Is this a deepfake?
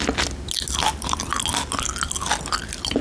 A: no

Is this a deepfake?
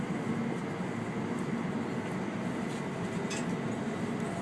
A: no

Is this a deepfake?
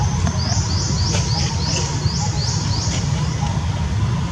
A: no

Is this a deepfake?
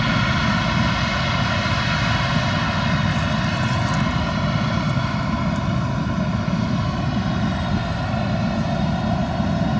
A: no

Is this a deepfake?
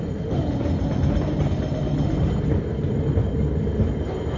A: no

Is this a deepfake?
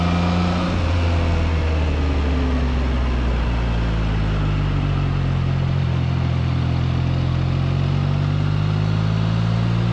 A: no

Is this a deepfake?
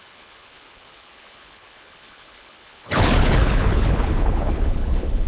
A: yes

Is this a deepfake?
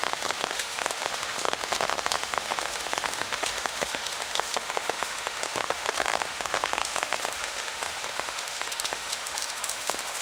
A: yes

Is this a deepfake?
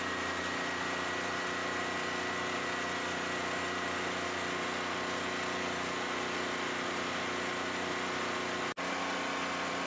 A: no